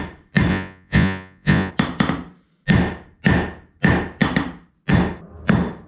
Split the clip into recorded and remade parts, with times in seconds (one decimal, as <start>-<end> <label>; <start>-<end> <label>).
0.0-0.5 recorded; 0.5-1.7 remade; 1.7-5.9 recorded